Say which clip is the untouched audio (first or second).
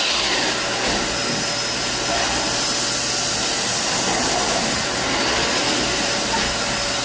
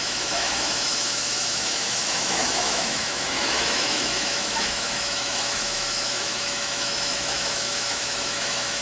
first